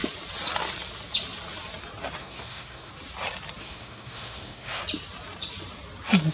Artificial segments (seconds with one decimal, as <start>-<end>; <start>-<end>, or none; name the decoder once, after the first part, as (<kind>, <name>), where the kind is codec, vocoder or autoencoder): 2.2-2.9 (codec, SNAC); 3.6-4.8